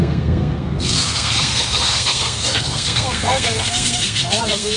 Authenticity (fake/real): fake